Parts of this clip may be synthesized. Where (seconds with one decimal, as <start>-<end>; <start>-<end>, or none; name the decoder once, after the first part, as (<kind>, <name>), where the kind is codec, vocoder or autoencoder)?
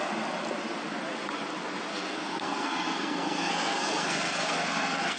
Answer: 1.9-5.2 (codec, SNAC)